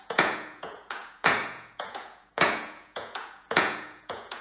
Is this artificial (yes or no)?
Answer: yes